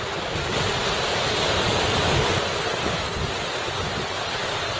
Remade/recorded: recorded